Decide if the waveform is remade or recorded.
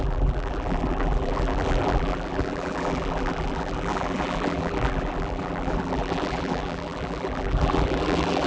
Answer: remade